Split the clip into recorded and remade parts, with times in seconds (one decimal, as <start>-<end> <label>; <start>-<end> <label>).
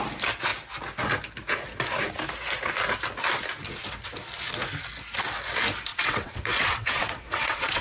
0.0-5.9 recorded; 5.9-7.8 remade